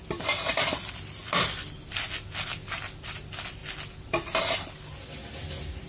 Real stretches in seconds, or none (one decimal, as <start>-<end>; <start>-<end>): 0.0-5.9